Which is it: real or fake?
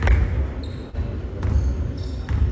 real